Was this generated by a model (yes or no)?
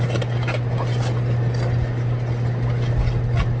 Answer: no